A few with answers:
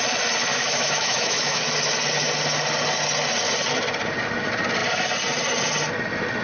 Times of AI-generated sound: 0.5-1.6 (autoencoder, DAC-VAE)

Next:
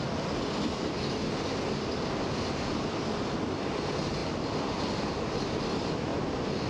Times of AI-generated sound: none

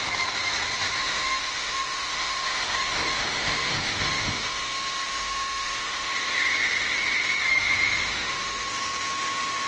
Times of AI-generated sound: 1.0-6.1 (autoencoder, DAC-VAE); 7.5-8.7

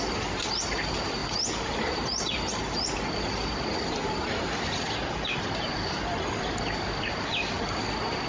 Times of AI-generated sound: none

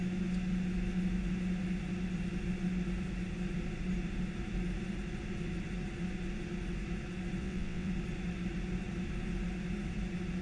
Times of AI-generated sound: 7.4-7.9 (vocoder, WaveNeXt)

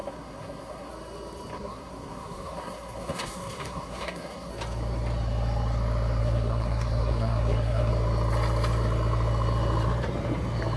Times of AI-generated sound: 0.0-0.9 (codec, SNAC); 1.5-4.5; 6.2-7.9